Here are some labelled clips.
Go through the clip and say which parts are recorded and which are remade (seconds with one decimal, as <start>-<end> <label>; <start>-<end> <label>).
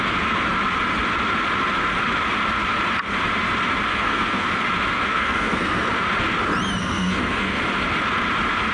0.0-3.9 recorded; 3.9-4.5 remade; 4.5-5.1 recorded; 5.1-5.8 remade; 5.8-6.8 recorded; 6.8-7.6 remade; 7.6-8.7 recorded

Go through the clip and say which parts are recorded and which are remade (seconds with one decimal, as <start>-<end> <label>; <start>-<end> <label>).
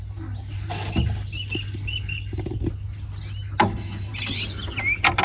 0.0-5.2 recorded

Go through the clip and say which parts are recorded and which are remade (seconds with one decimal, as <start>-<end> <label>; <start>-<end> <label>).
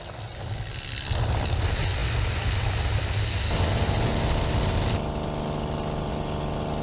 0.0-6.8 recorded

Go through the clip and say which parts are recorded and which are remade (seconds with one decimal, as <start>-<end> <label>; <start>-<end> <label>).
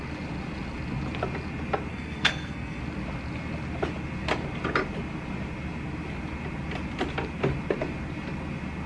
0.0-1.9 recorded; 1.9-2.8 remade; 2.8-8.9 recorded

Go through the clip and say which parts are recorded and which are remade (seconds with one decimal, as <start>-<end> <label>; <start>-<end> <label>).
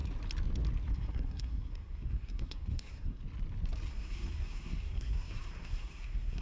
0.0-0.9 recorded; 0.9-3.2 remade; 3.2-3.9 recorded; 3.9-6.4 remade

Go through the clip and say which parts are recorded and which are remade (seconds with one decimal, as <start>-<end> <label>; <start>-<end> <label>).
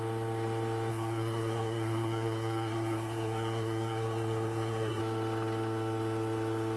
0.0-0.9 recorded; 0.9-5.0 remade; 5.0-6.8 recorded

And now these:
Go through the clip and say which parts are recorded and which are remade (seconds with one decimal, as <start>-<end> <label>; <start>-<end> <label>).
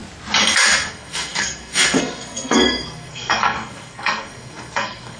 0.0-0.9 recorded; 0.9-5.2 remade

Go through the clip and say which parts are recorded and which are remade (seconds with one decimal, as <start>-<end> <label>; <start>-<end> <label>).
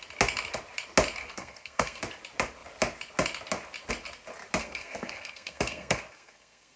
0.0-1.2 recorded; 1.2-2.0 remade; 2.0-4.6 recorded; 4.6-6.8 remade